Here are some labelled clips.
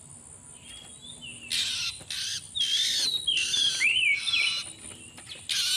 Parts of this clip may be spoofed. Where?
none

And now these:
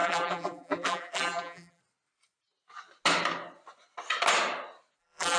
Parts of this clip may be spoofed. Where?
0.0-1.8 (vocoder, BigVGAN v2); 5.0-5.4